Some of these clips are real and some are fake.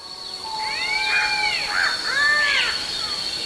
real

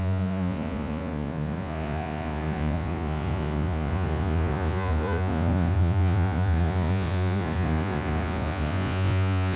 fake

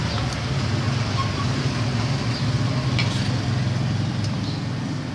real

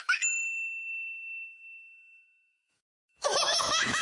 fake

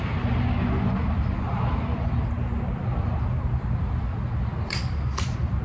real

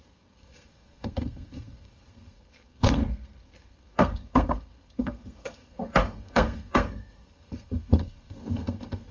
fake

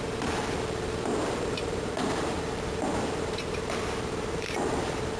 fake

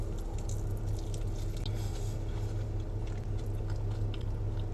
real